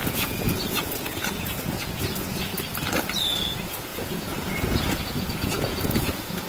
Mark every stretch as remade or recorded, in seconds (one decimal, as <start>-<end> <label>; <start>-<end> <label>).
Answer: 0.0-2.5 remade; 2.5-3.4 recorded; 3.4-6.5 remade